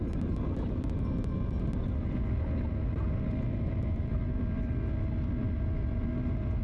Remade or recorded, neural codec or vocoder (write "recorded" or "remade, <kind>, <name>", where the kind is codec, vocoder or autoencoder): recorded